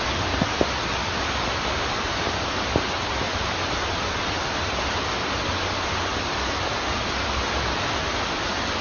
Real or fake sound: real